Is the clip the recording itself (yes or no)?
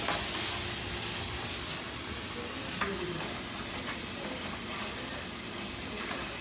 yes